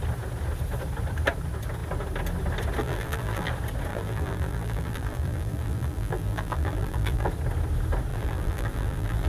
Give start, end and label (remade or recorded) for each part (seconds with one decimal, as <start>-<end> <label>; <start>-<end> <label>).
0.0-2.8 recorded; 2.8-3.5 remade; 3.5-3.9 recorded; 3.9-7.3 remade; 7.3-8.1 recorded; 8.1-9.3 remade